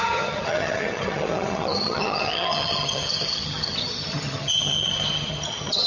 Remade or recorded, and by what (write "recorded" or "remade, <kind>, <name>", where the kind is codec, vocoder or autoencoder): remade, vocoder, HiFi-GAN